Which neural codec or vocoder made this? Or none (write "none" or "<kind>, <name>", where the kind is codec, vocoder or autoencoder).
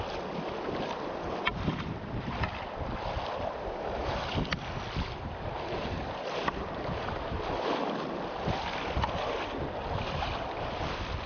none